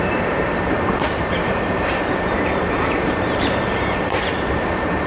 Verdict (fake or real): fake